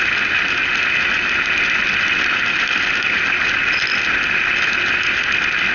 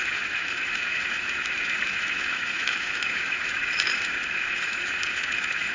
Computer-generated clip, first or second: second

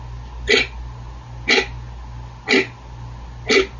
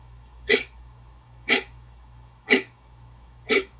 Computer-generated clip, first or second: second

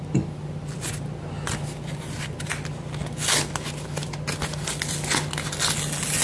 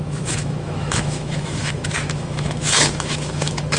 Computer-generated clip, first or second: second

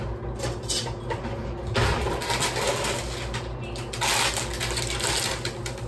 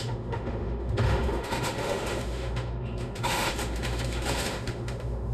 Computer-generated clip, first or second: second